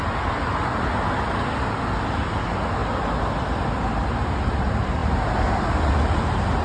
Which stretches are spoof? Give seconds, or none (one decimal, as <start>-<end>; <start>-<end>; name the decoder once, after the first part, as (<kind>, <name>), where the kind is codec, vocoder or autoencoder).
none